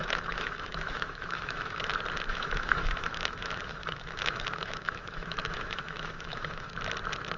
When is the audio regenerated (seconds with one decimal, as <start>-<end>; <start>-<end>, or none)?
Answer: 0.0-1.9; 2.3-6.7